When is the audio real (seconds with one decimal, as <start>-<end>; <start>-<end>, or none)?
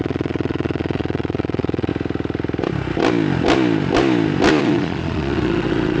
1.9-4.6